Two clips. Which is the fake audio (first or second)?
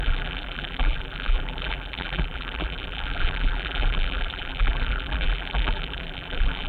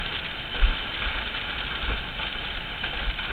first